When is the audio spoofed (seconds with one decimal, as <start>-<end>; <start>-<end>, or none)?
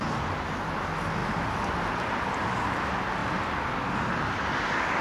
none